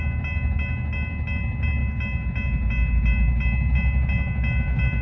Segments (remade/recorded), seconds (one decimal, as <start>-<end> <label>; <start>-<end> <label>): 0.0-5.0 recorded